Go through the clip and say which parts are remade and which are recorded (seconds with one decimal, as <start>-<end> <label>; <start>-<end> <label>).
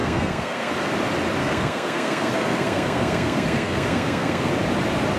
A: 0.0-0.7 remade; 0.7-1.4 recorded; 1.4-4.5 remade; 4.5-5.2 recorded